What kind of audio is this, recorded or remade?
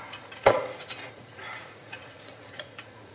remade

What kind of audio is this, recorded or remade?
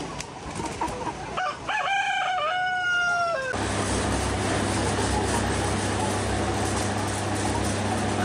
recorded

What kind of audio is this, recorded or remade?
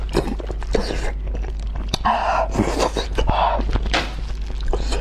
recorded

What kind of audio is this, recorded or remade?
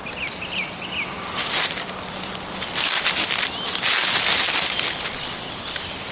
recorded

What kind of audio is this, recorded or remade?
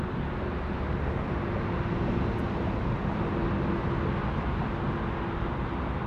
recorded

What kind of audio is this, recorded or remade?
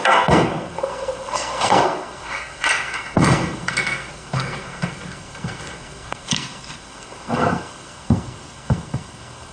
remade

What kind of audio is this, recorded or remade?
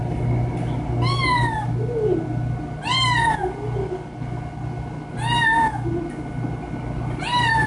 recorded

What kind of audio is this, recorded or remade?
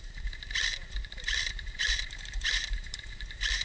remade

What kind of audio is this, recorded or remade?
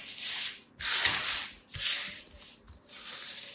recorded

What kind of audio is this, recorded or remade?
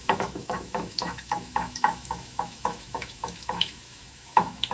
remade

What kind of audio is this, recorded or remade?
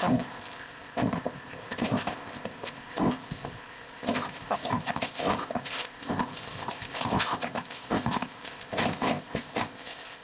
remade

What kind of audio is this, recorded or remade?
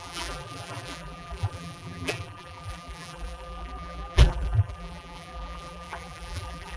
remade